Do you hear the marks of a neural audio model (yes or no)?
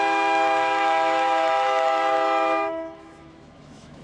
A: yes